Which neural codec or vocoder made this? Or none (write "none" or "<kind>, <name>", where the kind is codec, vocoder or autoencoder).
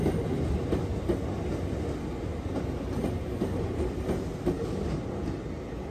none